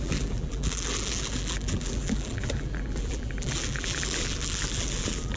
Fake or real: fake